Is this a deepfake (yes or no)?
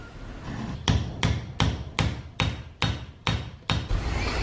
no